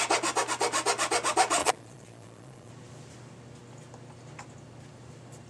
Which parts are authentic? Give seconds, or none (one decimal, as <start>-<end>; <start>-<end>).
0.0-1.6; 2.7-5.5